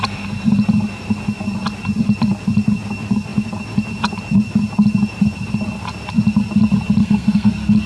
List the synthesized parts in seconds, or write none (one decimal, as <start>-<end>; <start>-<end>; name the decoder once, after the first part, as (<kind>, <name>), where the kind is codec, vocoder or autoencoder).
7.0-7.5 (codec, SNAC)